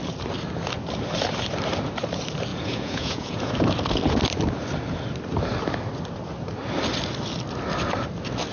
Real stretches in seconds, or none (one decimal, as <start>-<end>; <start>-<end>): 0.0-2.5; 3.5-8.5